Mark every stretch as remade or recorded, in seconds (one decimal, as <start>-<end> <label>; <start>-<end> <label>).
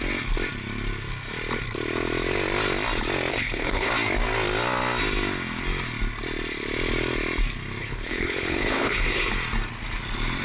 0.0-3.3 recorded; 3.3-3.9 remade; 3.9-7.8 recorded; 7.8-9.3 remade; 9.3-10.4 recorded